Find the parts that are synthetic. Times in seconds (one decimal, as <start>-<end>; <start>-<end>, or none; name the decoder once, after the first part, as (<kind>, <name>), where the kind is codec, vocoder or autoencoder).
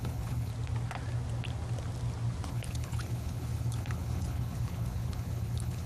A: 0.0-0.5 (codec, HILCodec); 2.5-5.9